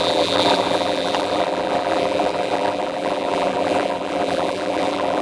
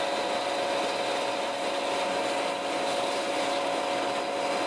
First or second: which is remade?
first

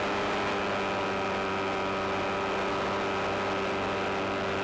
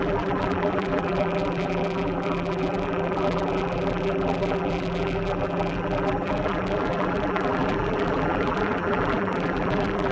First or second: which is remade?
second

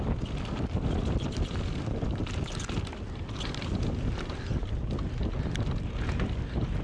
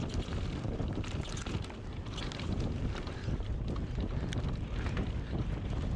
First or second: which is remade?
second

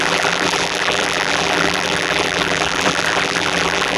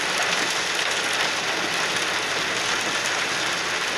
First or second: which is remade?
first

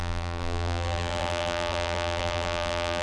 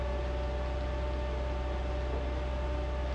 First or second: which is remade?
first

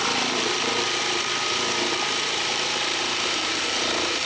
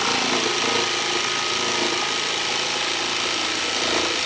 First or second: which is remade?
first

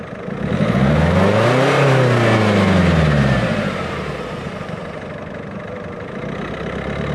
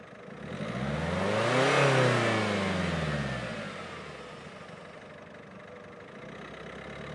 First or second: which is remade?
first